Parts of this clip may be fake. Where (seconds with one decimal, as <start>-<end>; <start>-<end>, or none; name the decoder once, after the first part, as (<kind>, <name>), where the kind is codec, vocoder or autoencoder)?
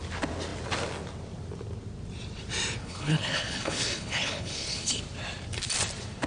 2.8-5.0 (codec, HILCodec)